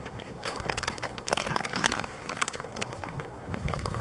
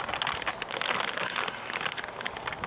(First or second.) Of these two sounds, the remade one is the first